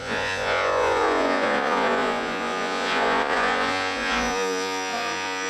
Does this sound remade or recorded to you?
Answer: remade